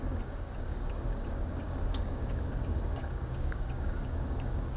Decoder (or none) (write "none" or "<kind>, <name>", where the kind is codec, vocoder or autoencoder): codec, DAC